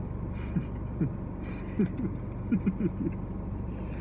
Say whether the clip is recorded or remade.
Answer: recorded